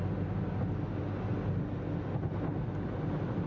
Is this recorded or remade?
recorded